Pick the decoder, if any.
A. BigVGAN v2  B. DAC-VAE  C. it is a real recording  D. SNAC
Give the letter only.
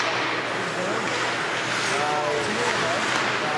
C